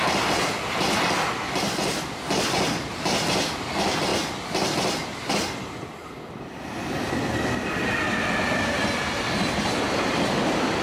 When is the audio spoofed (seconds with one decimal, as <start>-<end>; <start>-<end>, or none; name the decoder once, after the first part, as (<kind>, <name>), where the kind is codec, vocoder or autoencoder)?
none